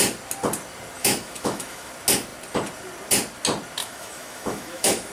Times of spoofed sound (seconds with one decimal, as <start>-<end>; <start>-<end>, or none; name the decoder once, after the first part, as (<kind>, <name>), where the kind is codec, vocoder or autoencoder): 1.0-1.9 (autoencoder, DAC-VAE); 3.8-5.1